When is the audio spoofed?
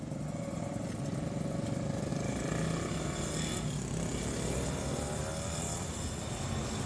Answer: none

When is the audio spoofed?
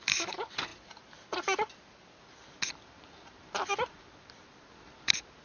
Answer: none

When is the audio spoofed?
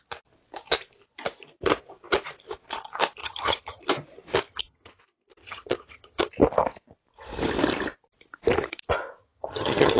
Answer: 3.2-3.8 (vocoder, HiFi-GAN); 4.5-5.0; 5.4-6.3; 9.2-10.0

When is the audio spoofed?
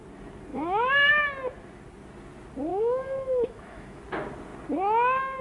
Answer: 0.5-1.1 (autoencoder, DAC-VAE); 2.7-4.0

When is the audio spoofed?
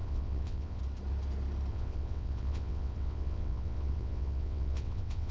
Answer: 0.0-0.8 (vocoder, WaveNeXt); 1.7-5.3